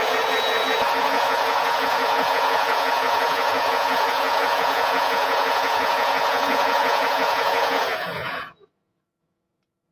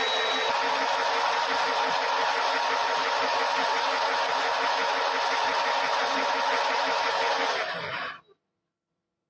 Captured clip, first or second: second